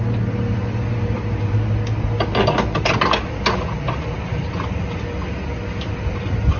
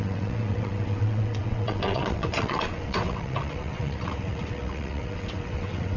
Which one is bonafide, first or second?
first